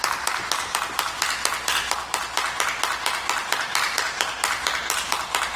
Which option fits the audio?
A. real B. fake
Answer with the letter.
A